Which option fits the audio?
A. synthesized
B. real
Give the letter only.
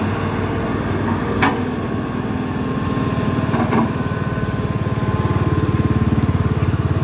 B